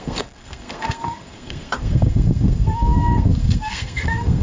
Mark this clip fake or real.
fake